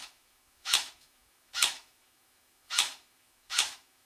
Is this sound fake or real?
fake